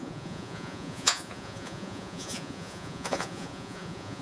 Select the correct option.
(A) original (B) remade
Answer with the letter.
B